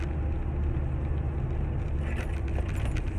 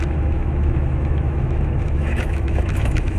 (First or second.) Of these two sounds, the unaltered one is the first